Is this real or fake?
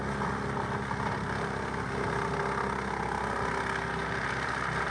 real